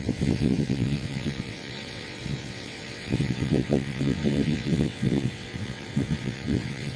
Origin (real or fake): fake